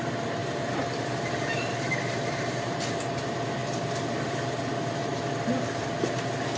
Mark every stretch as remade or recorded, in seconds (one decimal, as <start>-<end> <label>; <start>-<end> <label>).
0.0-0.4 recorded; 0.4-3.0 remade; 3.0-6.6 recorded